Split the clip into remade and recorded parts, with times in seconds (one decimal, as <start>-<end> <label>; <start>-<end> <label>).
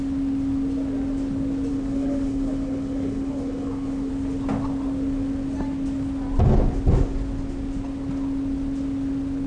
0.0-1.7 recorded; 1.7-4.1 remade; 4.1-9.5 recorded